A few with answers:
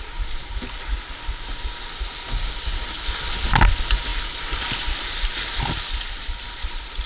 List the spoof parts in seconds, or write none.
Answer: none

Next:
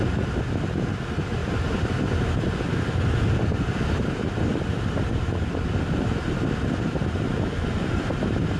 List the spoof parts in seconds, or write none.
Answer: none

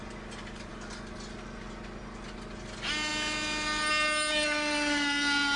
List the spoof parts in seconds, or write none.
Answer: none

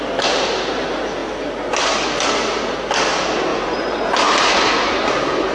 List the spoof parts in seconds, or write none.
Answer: 3.5-4.5 (vocoder, BigVGAN v2)